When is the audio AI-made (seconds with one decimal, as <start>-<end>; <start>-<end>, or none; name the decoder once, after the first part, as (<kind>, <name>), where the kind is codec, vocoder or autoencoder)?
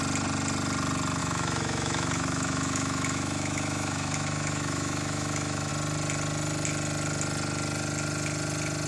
1.2-5.7 (autoencoder, DAC-VAE)